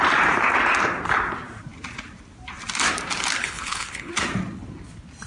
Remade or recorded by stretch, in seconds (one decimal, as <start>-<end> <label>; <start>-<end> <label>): 0.0-3.4 recorded; 3.4-4.1 remade; 4.1-5.3 recorded